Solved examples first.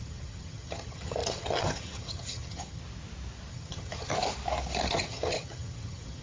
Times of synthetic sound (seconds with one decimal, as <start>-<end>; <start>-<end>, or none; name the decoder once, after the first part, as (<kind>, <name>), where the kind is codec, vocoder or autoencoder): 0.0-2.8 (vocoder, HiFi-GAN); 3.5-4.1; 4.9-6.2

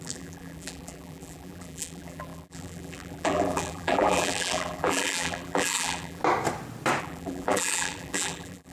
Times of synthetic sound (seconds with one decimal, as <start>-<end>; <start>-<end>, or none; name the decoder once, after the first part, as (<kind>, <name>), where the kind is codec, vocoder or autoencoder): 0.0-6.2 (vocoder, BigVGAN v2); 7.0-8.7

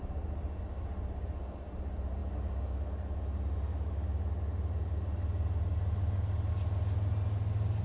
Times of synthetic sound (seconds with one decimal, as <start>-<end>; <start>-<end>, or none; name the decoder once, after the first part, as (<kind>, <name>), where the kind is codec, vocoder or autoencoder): none